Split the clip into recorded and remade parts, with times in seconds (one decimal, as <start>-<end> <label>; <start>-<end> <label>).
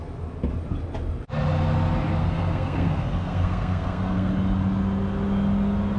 0.0-2.2 recorded; 2.2-4.3 remade; 4.3-6.0 recorded